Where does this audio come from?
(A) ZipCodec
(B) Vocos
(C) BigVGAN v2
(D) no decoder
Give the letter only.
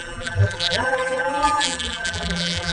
C